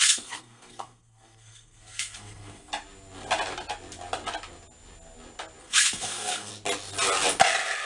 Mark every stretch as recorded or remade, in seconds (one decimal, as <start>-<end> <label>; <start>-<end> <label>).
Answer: 0.0-2.7 remade; 2.7-5.6 recorded; 5.6-6.5 remade; 6.5-7.9 recorded